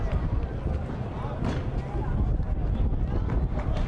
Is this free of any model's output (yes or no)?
yes